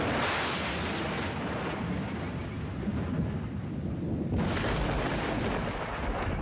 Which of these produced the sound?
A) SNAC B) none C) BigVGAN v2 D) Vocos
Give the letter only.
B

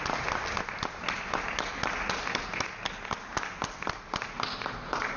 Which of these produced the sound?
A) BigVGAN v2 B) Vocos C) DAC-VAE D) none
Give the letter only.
D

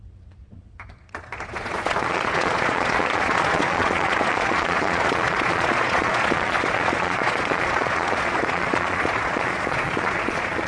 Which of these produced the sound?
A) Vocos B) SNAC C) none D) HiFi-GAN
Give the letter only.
A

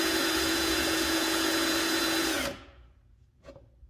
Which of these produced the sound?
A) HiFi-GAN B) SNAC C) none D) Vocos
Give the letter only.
D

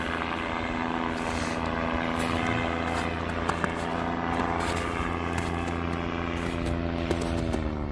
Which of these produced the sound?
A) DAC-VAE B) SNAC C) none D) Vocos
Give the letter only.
C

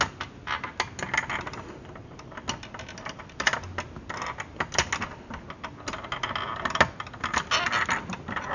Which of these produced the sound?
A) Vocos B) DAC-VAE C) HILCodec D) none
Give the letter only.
D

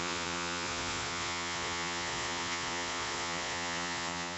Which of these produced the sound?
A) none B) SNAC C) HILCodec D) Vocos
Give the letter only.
D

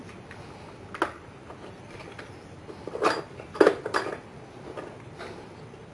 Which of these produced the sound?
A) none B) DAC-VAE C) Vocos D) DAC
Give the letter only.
A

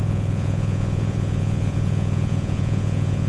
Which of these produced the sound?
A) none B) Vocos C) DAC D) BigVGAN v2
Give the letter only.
B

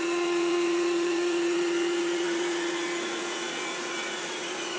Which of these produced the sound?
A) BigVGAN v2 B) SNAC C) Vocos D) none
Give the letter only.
C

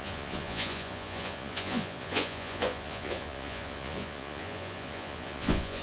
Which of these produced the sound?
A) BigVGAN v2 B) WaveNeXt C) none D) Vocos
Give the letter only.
D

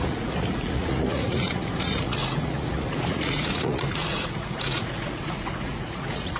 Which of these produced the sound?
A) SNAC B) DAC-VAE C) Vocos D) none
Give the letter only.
C